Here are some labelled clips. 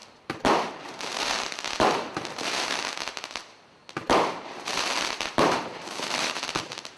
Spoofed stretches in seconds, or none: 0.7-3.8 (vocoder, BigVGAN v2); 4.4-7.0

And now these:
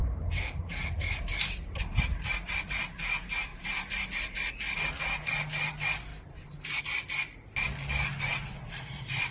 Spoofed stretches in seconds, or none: 0.0-0.6 (vocoder, BigVGAN v2); 1.3-2.0; 3.5-4.5; 6.1-6.8

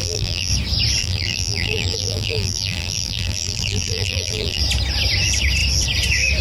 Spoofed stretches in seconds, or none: 0.0-0.5 (vocoder, BigVGAN v2); 1.0-4.6

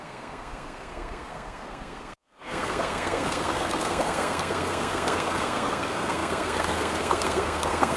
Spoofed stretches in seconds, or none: 0.0-8.0 (codec, SNAC)